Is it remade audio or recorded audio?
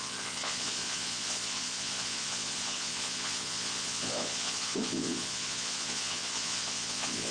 remade